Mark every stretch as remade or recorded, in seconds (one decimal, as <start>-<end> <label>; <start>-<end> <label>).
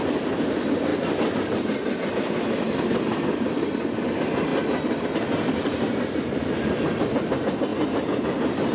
0.0-0.9 recorded; 0.9-2.1 remade; 2.1-7.7 recorded; 7.7-8.7 remade